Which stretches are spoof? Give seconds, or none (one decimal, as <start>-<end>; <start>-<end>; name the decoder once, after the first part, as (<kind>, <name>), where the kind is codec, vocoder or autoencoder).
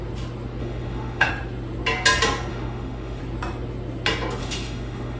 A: 0.6-1.3 (autoencoder, DAC-VAE); 2.5-3.2; 4.4-5.2